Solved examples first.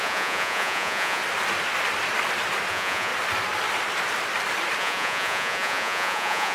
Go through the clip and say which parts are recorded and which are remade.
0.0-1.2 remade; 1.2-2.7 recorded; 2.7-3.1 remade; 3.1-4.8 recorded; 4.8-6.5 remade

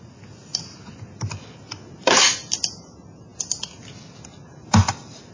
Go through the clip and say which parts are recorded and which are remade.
0.0-5.3 recorded

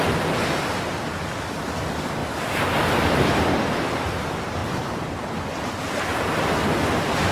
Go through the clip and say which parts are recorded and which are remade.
0.0-2.2 recorded; 2.2-4.0 remade; 4.0-7.3 recorded

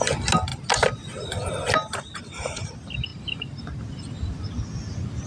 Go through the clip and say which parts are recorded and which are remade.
0.0-5.3 recorded

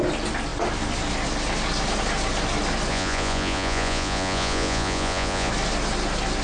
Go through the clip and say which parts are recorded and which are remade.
0.0-2.9 recorded; 2.9-5.5 remade; 5.5-6.4 recorded

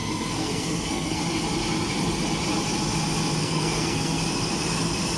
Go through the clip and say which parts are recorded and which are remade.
0.0-1.2 remade; 1.2-3.4 recorded; 3.4-4.2 remade; 4.2-5.2 recorded

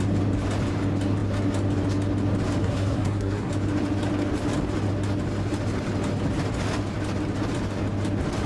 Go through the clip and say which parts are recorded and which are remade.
0.0-2.6 recorded; 2.6-3.5 remade; 3.5-8.5 recorded

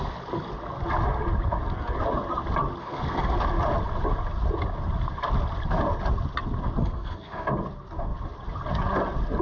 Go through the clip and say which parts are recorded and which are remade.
0.0-2.8 recorded; 2.8-3.4 remade; 3.4-6.8 recorded; 6.8-7.5 remade; 7.5-9.4 recorded